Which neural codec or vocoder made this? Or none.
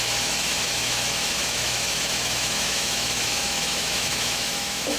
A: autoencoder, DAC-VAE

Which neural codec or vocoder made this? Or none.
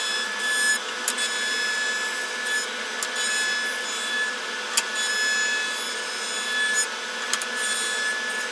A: none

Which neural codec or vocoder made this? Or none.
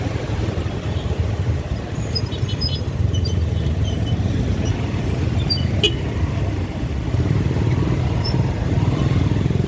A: vocoder, BigVGAN v2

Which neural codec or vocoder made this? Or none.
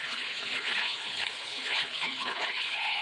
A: codec, HILCodec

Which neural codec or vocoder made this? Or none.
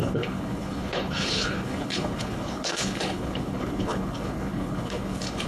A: codec, HILCodec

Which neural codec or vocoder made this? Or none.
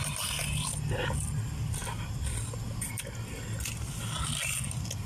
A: none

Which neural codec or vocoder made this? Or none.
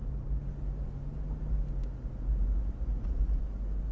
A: none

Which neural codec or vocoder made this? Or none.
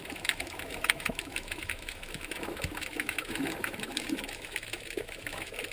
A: autoencoder, DAC-VAE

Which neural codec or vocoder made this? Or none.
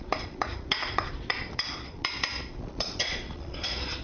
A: vocoder, Vocos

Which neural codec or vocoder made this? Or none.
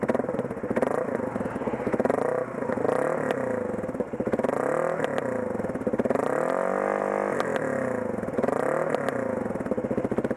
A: none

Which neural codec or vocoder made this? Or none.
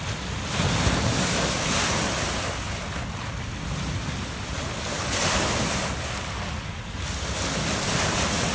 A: none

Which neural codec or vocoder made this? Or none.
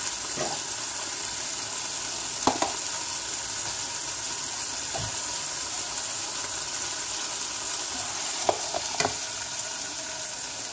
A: none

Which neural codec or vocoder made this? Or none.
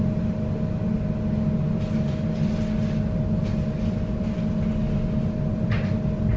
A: none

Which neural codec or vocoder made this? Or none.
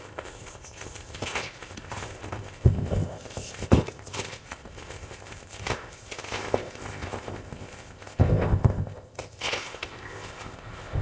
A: codec, ZipCodec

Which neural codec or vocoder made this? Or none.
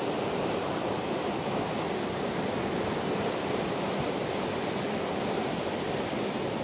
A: vocoder, BigVGAN v2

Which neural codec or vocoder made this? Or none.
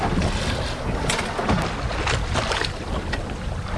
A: none